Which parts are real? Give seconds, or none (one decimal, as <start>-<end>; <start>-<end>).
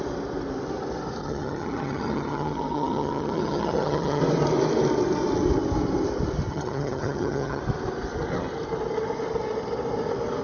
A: 0.0-1.2; 4.2-6.5; 7.6-10.4